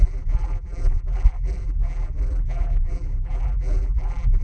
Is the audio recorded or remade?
remade